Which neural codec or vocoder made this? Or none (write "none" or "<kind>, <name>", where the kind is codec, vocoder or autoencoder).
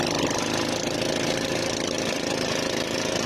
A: none